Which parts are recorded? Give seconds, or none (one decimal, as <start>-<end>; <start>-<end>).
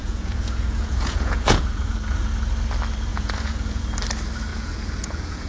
2.2-3.1; 3.8-4.5